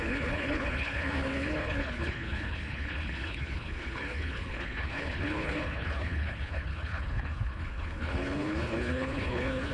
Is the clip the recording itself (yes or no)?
no